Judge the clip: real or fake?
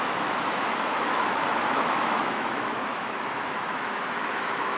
fake